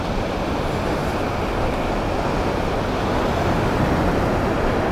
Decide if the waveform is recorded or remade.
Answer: recorded